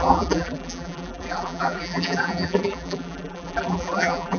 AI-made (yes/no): yes